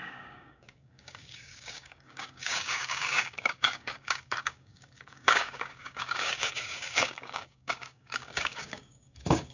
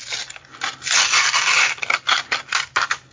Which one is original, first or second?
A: second